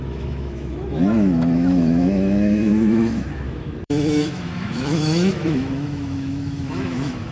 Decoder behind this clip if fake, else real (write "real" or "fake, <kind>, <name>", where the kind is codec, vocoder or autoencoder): fake, autoencoder, DAC-VAE